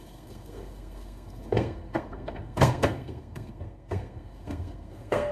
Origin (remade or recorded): remade